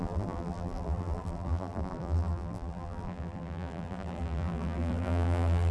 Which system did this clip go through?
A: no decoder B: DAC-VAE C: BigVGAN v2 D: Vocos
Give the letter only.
C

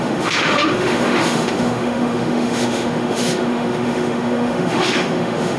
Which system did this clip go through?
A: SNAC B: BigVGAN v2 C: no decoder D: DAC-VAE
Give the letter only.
D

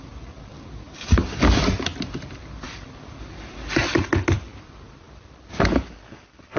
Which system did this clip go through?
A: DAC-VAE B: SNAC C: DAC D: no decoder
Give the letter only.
D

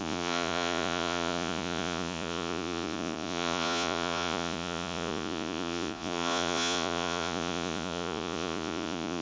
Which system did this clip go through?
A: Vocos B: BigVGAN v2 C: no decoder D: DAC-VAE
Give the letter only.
A